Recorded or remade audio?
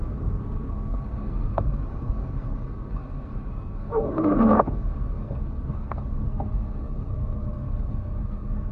remade